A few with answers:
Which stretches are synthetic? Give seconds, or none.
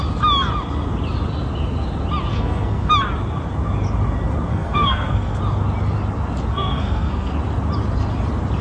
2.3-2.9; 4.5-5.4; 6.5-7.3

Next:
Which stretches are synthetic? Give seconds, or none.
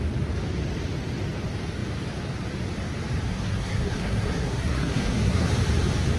3.3-5.5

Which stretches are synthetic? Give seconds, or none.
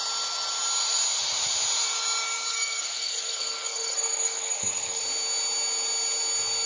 2.5-5.0